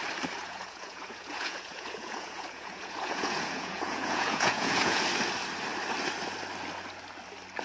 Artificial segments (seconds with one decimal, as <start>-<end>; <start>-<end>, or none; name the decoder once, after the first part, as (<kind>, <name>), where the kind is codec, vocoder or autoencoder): 0.4-5.0 (vocoder, Vocos)